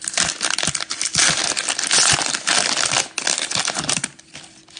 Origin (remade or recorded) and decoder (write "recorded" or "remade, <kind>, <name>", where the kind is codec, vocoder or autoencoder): recorded